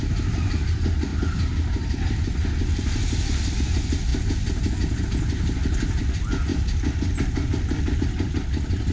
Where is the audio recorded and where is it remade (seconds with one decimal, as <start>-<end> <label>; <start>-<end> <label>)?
0.0-8.9 recorded